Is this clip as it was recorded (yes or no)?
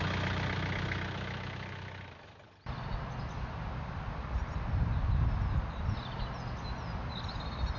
yes